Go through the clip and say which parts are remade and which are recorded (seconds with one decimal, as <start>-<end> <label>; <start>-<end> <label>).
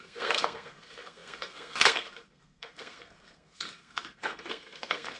0.0-5.2 remade